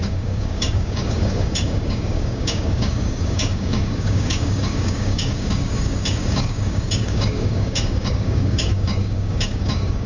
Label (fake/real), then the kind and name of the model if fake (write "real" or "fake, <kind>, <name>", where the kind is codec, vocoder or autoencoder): fake, codec, DAC